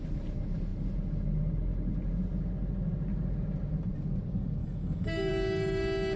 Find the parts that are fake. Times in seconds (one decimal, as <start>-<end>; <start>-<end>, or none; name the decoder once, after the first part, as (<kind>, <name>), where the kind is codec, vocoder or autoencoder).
4.6-5.3 (codec, DAC)